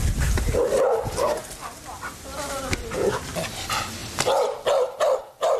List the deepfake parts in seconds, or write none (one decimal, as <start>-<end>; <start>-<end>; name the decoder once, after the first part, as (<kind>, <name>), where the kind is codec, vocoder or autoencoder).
none